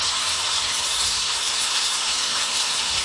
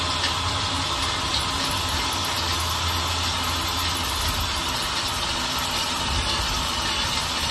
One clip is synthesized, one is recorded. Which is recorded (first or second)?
second